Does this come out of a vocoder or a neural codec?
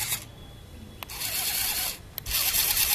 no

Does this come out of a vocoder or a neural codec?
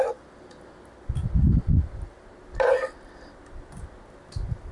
no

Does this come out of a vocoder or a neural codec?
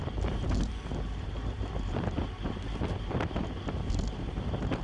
yes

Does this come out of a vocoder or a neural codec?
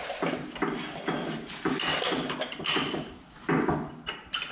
no